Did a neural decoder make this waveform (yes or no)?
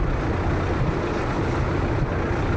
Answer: no